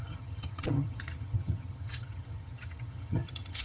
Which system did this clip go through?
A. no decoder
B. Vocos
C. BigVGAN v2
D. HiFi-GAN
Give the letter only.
D